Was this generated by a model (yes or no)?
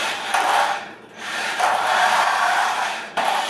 yes